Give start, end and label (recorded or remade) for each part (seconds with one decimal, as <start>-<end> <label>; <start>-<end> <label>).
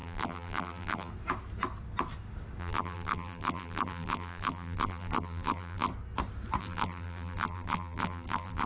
0.0-1.1 remade; 1.1-2.6 recorded; 2.6-5.9 remade; 5.9-6.6 recorded; 6.6-8.7 remade